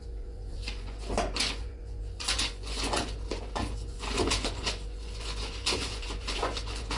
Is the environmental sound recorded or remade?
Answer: remade